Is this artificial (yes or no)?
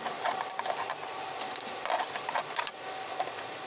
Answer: no